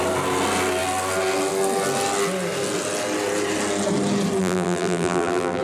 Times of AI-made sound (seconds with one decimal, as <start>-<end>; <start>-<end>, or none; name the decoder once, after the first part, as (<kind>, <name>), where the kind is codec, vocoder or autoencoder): 4.4-5.6 (vocoder, BigVGAN v2)